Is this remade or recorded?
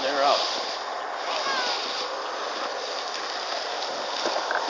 recorded